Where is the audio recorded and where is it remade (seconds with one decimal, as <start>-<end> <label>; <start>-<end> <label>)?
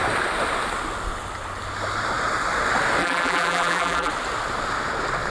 0.0-3.0 recorded; 3.0-4.1 remade; 4.1-5.3 recorded